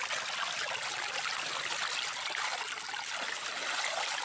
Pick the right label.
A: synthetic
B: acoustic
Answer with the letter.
B